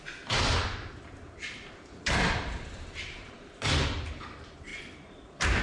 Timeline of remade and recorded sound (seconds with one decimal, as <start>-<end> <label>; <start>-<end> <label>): 0.0-5.6 remade